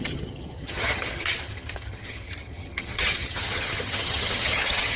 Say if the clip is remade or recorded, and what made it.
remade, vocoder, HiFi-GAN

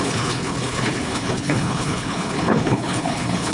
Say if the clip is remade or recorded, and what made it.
remade, codec, HILCodec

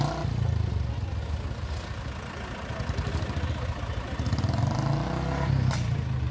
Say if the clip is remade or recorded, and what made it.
recorded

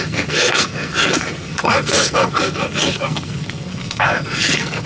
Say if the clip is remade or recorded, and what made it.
remade, codec, SNAC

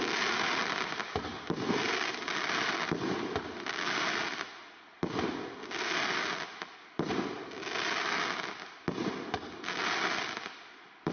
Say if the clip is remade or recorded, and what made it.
recorded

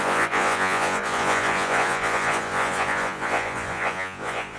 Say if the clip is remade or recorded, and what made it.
remade, vocoder, Vocos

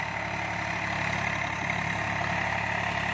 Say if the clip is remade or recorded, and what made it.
recorded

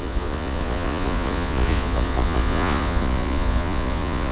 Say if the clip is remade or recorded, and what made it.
remade, vocoder, Vocos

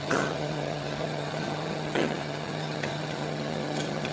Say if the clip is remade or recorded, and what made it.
remade, vocoder, HiFi-GAN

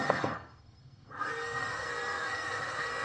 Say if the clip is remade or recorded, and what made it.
remade, codec, SNAC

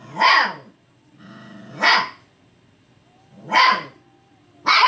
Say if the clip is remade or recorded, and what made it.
recorded